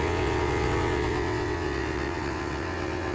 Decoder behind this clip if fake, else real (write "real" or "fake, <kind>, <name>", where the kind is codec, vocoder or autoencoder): fake, vocoder, WaveNeXt